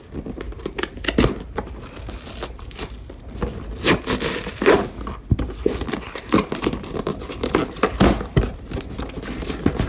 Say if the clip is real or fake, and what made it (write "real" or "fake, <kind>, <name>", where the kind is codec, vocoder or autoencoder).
real